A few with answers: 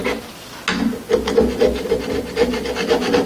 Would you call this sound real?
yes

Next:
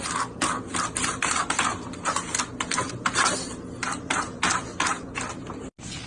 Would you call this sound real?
no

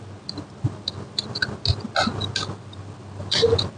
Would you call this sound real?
yes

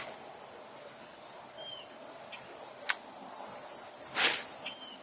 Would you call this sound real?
yes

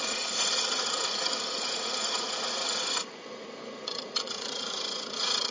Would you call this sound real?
no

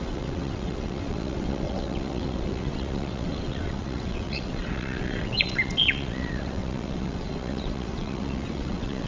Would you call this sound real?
no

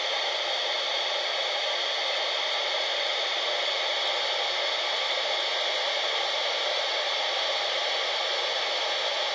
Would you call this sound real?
yes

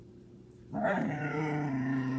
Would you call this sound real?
no